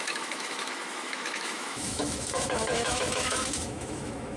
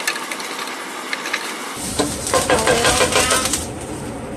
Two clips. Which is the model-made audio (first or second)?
first